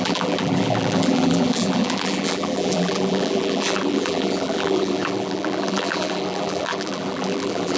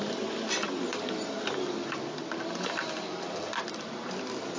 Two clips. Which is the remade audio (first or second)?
first